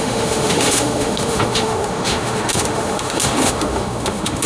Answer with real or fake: fake